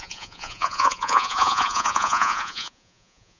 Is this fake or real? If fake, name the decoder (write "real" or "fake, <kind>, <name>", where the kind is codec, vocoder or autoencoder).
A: fake, vocoder, Vocos